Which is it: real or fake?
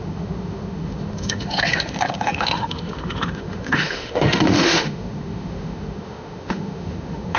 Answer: fake